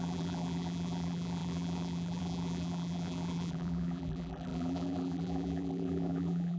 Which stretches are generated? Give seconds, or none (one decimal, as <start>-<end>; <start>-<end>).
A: 0.0-6.6